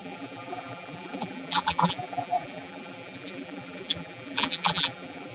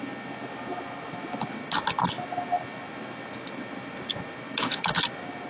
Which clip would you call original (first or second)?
second